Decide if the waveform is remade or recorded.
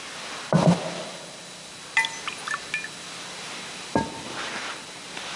recorded